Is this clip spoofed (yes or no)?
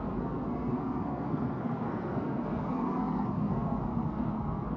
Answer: yes